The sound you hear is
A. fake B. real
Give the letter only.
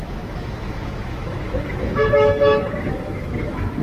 A